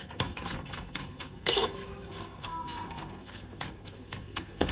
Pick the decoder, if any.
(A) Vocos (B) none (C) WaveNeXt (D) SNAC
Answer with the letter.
D